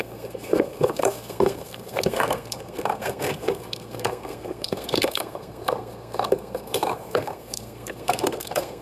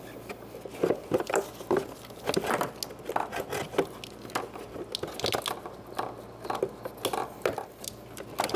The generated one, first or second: first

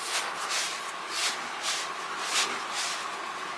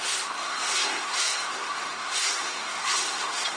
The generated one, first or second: second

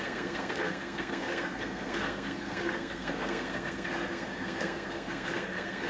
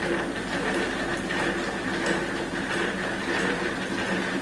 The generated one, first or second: first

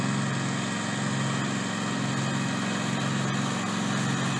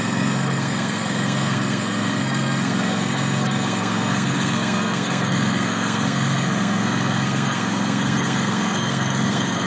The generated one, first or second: second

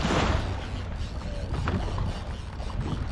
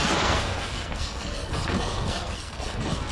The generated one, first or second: second